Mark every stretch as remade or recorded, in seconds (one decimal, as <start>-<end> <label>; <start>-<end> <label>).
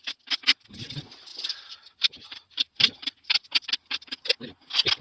0.0-1.3 recorded; 1.3-4.3 remade; 4.3-5.0 recorded